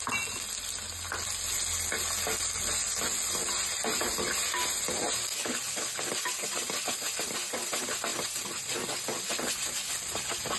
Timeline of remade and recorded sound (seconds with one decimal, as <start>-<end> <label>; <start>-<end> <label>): 0.0-10.6 recorded